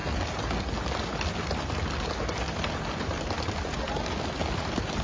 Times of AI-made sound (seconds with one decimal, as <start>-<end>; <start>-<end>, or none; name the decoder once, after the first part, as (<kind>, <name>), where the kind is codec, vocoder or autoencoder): none